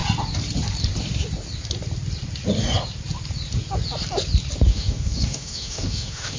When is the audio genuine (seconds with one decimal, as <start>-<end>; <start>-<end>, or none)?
0.0-4.7